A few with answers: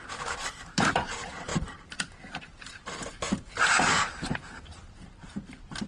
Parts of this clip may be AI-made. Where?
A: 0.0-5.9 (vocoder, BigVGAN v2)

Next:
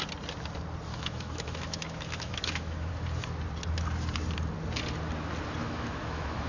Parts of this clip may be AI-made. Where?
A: 0.9-2.9 (autoencoder, DAC-VAE); 5.6-6.5

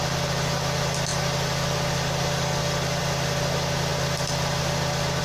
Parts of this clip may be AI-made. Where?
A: none

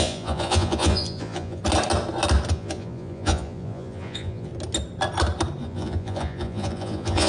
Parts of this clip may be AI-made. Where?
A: 0.0-1.6 (vocoder, Vocos); 2.5-4.5; 5.6-7.3